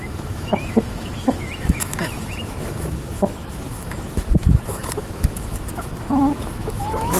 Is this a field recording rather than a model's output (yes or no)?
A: no